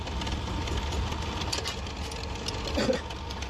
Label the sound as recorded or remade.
recorded